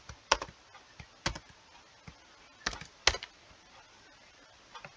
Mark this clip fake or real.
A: real